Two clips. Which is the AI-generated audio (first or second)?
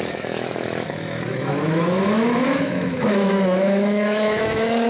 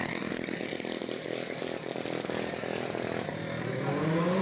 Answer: first